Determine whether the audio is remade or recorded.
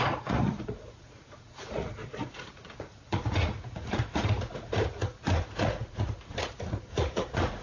remade